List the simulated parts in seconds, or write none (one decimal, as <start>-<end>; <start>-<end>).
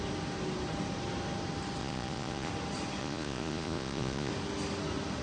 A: 1.8-2.5; 3.0-4.3